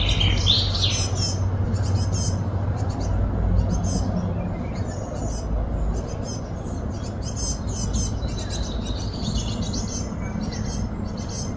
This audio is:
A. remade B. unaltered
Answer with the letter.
B